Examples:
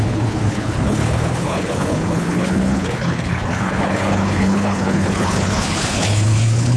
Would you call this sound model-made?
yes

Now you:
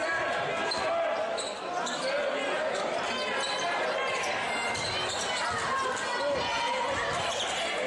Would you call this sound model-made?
no